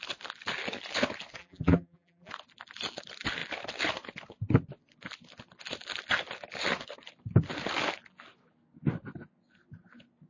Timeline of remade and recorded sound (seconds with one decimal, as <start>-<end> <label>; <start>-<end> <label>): 0.0-1.4 recorded; 1.4-2.3 remade; 2.3-10.3 recorded